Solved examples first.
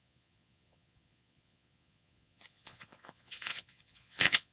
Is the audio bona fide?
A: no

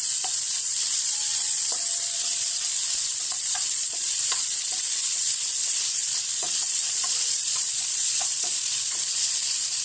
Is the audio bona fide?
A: no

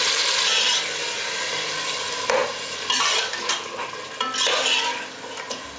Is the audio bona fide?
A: yes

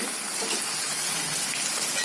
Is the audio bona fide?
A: yes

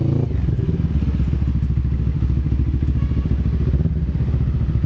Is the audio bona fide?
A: yes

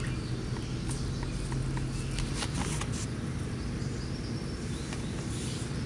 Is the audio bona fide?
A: yes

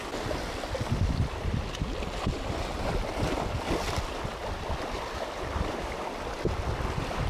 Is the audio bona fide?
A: yes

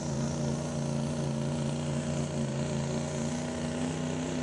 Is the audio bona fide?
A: yes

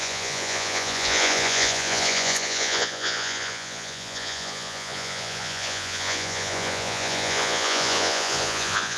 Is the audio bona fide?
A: no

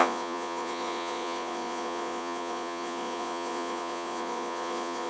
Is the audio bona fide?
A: no